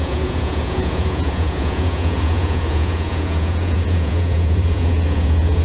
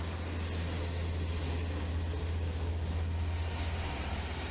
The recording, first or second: second